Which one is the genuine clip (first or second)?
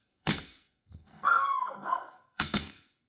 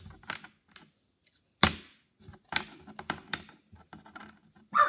second